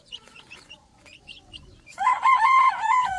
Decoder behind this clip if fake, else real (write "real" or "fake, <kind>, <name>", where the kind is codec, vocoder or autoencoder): fake, vocoder, Vocos